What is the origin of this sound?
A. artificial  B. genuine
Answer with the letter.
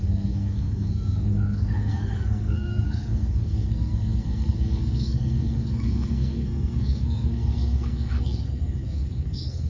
A